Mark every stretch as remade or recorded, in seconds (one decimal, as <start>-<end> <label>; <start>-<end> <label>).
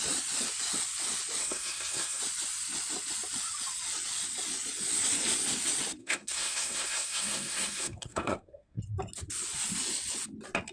0.0-1.4 recorded; 1.4-2.2 remade; 2.2-6.0 recorded; 6.0-8.8 remade; 8.8-10.7 recorded